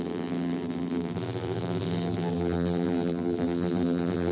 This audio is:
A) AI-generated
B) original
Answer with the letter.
A